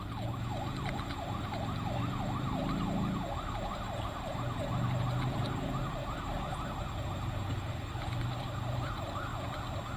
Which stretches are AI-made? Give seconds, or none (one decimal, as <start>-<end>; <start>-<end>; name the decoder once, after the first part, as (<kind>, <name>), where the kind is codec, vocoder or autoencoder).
0.0-9.3 (vocoder, BigVGAN v2)